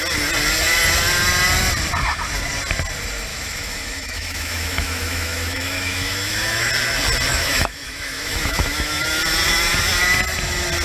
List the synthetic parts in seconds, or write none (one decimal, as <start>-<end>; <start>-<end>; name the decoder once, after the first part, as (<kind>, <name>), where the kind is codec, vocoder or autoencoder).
3.3-6.7 (autoencoder, DAC-VAE); 7.3-9.2